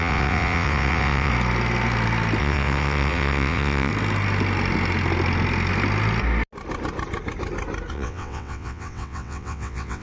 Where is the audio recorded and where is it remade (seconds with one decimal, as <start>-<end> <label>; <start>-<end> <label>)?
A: 0.0-1.3 remade; 1.3-2.4 recorded; 2.4-3.9 remade; 3.9-7.9 recorded; 7.9-10.0 remade